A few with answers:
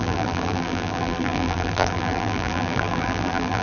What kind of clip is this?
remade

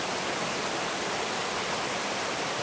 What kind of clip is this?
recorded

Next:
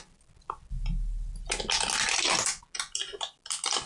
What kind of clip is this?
recorded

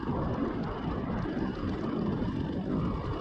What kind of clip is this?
recorded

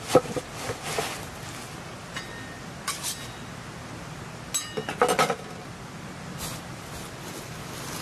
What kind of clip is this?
recorded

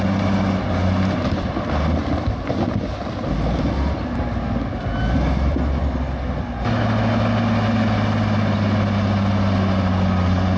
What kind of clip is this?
recorded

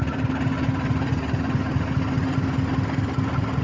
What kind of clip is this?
recorded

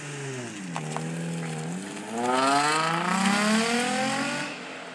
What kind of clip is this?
recorded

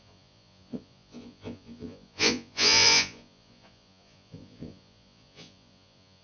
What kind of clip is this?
remade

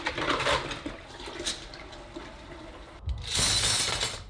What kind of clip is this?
recorded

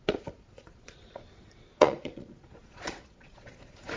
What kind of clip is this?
remade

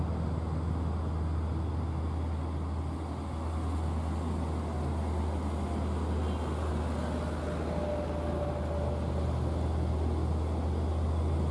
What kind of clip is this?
recorded